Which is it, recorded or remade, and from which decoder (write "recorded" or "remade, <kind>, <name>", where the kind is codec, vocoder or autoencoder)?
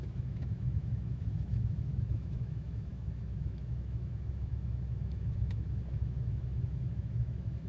remade, autoencoder, DAC-VAE